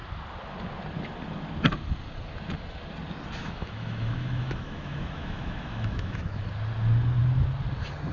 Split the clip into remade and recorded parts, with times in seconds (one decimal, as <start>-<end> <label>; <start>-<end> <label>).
0.0-3.4 recorded; 3.4-6.4 remade; 6.4-8.1 recorded